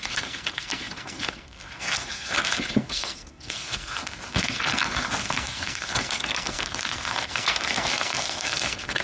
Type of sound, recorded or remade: remade